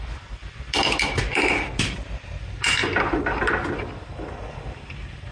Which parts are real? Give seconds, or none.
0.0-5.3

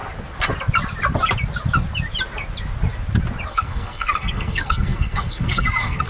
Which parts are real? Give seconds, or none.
0.0-3.5